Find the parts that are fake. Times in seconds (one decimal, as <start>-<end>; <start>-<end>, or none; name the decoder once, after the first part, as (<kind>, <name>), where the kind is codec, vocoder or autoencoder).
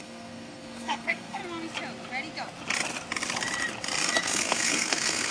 0.0-1.4 (codec, SNAC); 4.2-5.3